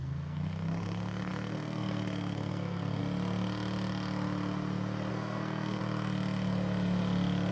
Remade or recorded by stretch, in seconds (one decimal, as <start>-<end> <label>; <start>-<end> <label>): 0.0-3.0 remade; 3.0-5.1 recorded; 5.1-5.8 remade; 5.8-7.5 recorded